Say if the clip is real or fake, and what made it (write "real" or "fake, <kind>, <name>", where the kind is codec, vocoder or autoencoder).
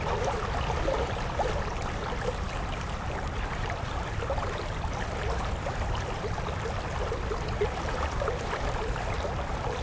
fake, vocoder, BigVGAN v2